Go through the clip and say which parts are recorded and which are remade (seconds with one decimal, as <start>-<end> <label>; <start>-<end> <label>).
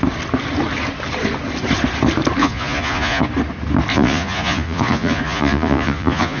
0.0-2.4 recorded; 2.4-3.3 remade; 3.3-3.9 recorded; 3.9-6.4 remade